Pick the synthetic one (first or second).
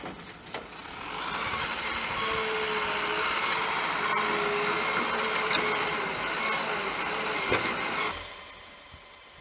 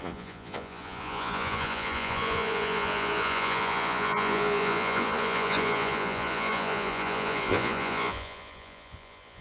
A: second